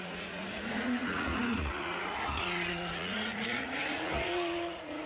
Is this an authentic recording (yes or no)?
no